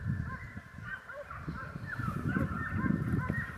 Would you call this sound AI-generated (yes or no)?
yes